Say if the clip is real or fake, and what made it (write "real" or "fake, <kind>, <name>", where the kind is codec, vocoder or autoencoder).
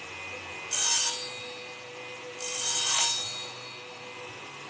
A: real